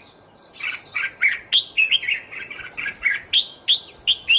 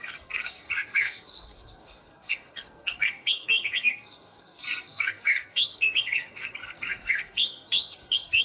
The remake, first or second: second